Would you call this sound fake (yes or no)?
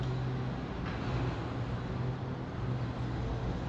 no